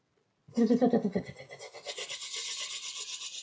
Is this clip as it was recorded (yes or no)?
yes